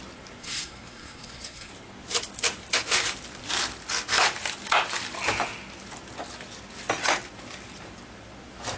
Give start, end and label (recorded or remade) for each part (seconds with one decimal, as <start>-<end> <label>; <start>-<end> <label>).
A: 0.0-0.4 recorded; 0.4-1.7 remade; 1.7-8.8 recorded